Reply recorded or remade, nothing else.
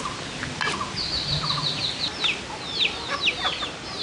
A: recorded